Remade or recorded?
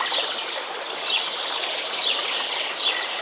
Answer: recorded